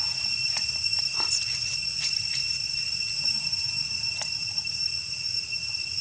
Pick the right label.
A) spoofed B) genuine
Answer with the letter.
A